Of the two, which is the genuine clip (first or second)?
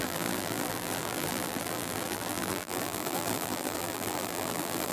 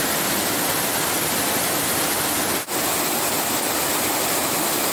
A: second